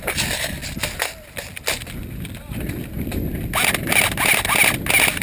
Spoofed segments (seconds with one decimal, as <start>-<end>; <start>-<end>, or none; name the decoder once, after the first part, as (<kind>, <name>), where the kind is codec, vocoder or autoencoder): none